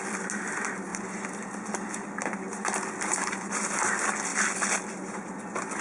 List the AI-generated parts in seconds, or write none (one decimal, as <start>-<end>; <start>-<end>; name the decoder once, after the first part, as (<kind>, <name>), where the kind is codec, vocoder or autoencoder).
none